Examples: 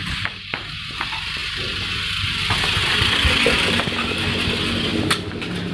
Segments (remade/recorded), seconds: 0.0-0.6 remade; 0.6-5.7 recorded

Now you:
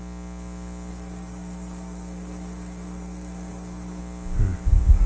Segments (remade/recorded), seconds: 0.0-0.9 recorded; 0.9-4.0 remade; 4.0-5.1 recorded

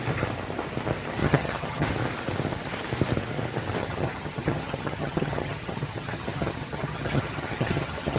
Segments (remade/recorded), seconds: 0.0-1.2 recorded; 1.2-1.9 remade; 1.9-3.8 recorded; 3.8-8.2 remade

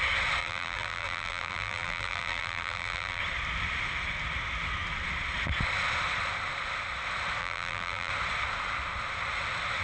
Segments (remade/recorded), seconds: 0.0-0.4 recorded; 0.4-3.2 remade; 3.2-7.4 recorded; 7.4-8.1 remade; 8.1-9.8 recorded

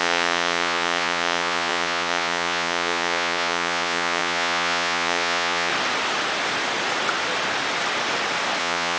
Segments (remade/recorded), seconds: 0.0-5.7 remade; 5.7-8.6 recorded; 8.6-9.0 remade